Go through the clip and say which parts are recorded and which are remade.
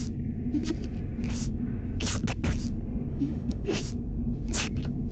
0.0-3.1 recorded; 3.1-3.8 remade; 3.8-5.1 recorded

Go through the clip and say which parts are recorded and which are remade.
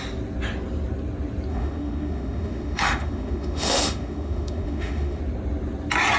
0.0-1.5 recorded; 1.5-5.2 remade; 5.2-6.2 recorded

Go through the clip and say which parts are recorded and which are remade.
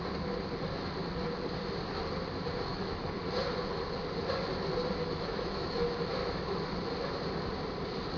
0.0-2.7 recorded; 2.7-3.2 remade; 3.2-5.0 recorded; 5.0-5.7 remade; 5.7-6.2 recorded; 6.2-6.7 remade; 6.7-8.2 recorded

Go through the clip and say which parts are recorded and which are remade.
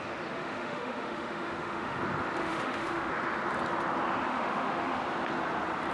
0.0-0.4 recorded; 0.4-2.0 remade; 2.0-2.4 recorded; 2.4-3.1 remade; 3.1-4.3 recorded; 4.3-5.0 remade; 5.0-5.9 recorded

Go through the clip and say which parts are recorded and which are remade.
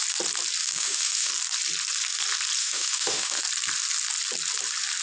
0.0-0.6 recorded; 0.6-1.3 remade; 1.3-2.6 recorded; 2.6-3.4 remade; 3.4-5.0 recorded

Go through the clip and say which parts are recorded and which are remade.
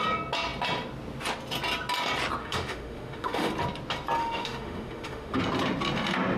0.0-2.4 recorded; 2.4-3.5 remade; 3.5-4.2 recorded; 4.2-5.4 remade; 5.4-6.4 recorded